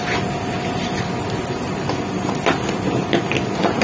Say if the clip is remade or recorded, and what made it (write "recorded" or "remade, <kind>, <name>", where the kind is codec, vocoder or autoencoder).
recorded